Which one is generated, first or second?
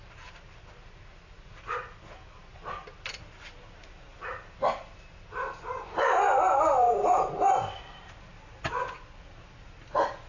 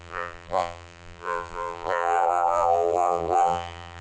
second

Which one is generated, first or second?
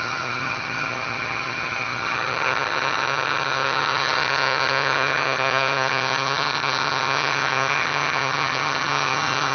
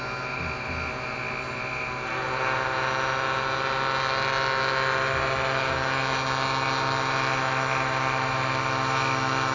first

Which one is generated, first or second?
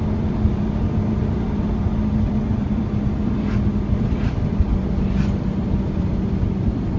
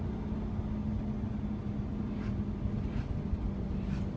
first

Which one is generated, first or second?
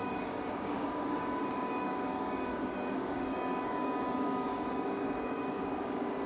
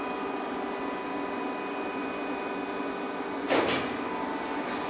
first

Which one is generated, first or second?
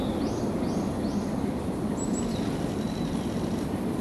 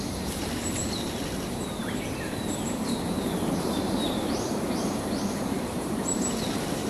second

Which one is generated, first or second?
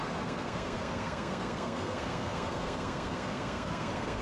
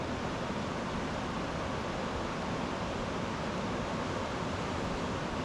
first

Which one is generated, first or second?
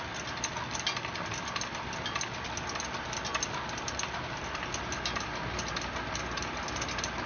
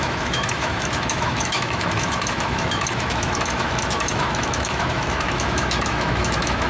second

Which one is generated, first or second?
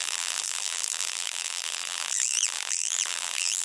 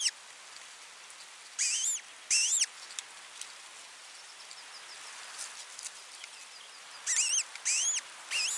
first